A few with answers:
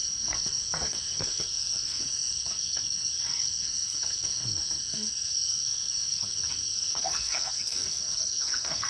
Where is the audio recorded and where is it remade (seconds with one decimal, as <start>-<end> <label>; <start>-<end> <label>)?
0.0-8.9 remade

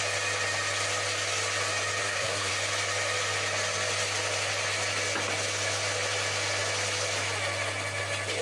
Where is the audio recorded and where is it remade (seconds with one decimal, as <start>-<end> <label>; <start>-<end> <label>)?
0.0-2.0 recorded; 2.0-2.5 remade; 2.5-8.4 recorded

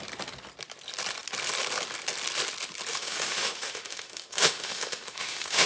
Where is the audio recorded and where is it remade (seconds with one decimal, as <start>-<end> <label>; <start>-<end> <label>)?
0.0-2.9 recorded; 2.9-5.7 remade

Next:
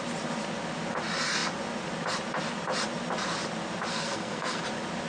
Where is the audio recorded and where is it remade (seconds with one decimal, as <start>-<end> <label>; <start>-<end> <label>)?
0.0-3.9 recorded; 3.9-4.6 remade; 4.6-5.1 recorded

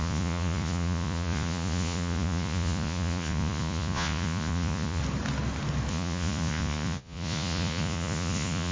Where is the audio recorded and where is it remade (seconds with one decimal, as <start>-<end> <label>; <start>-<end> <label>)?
0.0-5.0 remade; 5.0-5.9 recorded; 5.9-8.7 remade